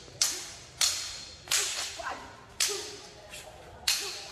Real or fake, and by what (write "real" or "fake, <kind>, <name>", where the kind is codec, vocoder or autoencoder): real